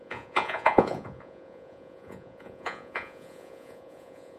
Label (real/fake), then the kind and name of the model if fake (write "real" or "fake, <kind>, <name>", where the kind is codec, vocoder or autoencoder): fake, vocoder, Vocos